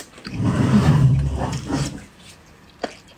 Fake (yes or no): no